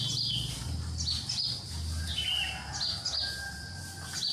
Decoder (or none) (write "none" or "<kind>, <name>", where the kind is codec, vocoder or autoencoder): none